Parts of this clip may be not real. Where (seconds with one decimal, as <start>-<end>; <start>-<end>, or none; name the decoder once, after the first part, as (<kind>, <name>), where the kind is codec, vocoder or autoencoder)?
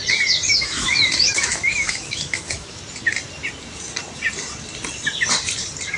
0.5-2.8 (autoencoder, DAC-VAE)